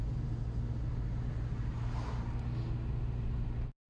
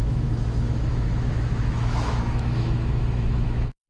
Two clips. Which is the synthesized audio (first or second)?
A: second